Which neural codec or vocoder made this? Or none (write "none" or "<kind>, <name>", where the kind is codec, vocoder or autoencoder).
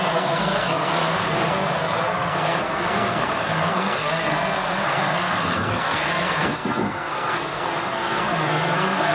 codec, SNAC